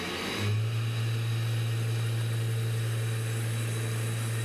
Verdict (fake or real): real